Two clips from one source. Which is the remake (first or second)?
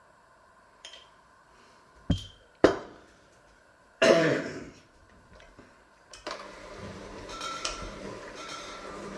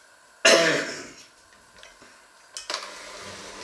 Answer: first